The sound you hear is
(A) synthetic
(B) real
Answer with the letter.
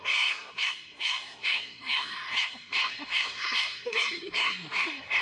A